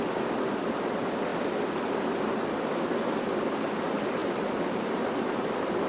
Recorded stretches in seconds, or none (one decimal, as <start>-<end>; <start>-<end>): 0.0-4.2; 5.5-5.9